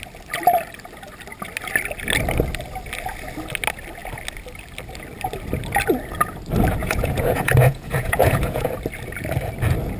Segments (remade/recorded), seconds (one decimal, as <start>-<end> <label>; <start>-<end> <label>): 0.0-6.8 recorded; 6.8-8.7 remade; 8.7-10.0 recorded